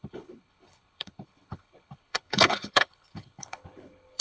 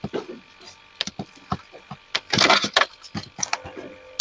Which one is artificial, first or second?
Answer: first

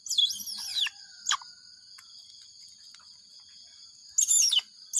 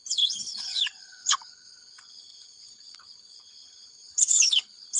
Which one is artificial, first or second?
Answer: second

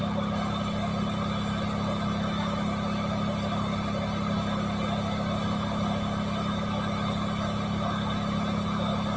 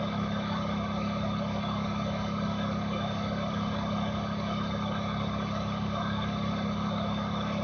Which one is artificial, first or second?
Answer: second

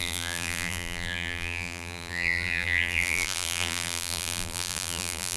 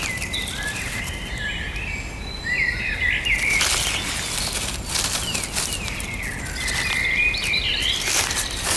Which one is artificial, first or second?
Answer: first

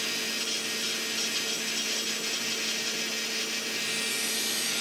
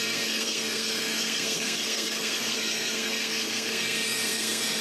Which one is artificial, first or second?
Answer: second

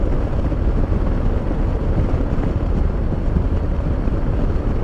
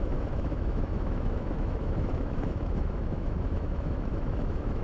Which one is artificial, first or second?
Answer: second